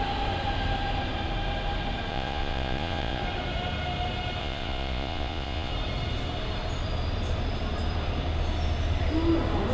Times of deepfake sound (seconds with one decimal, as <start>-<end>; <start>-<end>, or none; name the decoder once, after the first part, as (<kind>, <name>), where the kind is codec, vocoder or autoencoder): 2.1-3.2 (vocoder, Vocos); 4.4-5.7